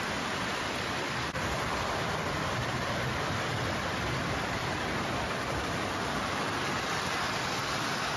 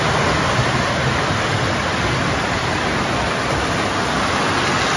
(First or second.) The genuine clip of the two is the second